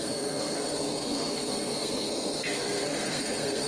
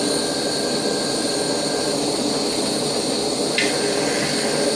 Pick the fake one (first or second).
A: first